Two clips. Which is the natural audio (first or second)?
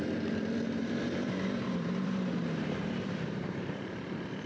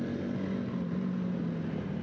second